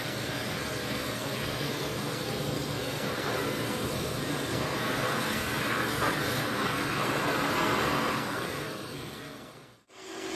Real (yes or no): no